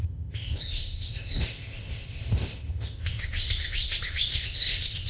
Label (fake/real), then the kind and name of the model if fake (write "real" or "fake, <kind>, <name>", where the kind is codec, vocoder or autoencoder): fake, codec, ZipCodec